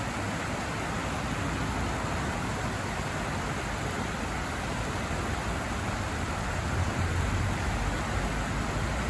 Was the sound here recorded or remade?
recorded